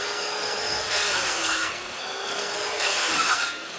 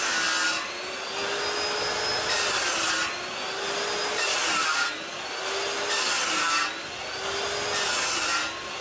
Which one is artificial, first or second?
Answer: first